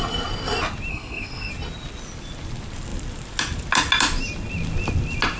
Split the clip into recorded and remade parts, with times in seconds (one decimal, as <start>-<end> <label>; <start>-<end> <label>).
0.0-0.9 recorded; 0.9-1.5 remade; 1.5-5.4 recorded